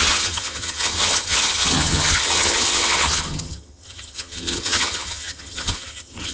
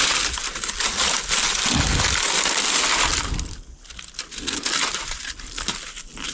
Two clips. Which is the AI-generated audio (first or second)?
first